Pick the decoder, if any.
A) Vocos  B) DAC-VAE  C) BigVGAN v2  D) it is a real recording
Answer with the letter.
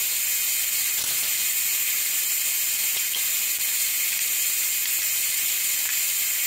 D